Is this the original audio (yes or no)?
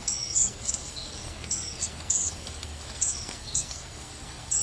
no